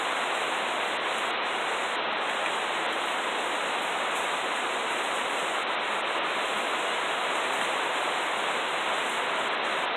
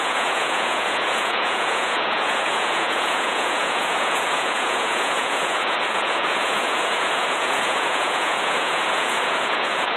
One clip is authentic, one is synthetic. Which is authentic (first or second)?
first